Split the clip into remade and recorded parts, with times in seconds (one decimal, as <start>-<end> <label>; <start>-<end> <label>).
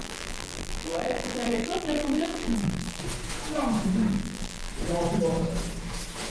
0.0-3.0 remade; 3.0-4.1 recorded; 4.1-4.7 remade; 4.7-6.3 recorded